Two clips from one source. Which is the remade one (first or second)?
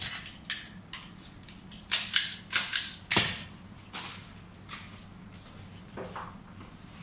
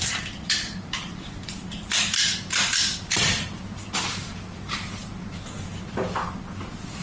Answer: second